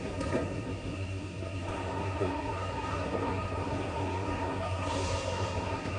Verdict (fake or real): fake